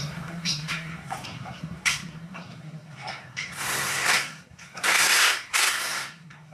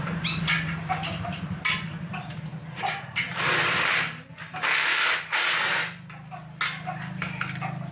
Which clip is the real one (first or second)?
second